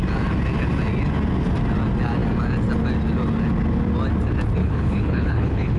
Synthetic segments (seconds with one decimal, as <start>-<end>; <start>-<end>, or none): 4.6-5.8